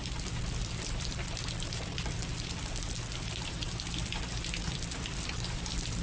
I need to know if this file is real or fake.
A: fake